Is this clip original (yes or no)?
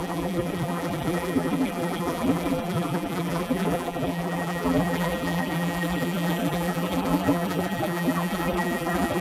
no